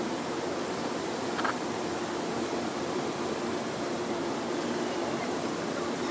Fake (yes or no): yes